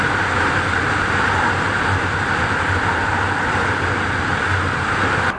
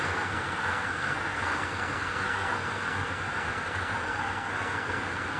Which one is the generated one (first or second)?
second